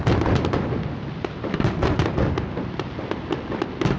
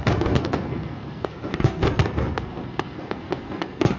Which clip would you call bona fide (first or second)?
first